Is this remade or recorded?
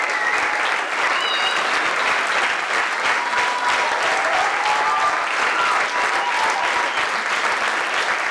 recorded